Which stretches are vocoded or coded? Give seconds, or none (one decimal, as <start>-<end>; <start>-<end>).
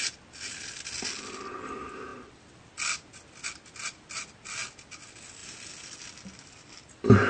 none